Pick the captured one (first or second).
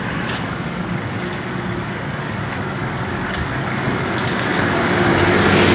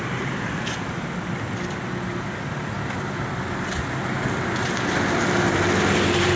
second